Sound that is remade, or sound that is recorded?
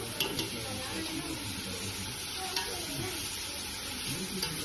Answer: recorded